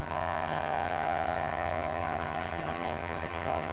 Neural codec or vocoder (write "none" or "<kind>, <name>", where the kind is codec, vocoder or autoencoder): vocoder, HiFi-GAN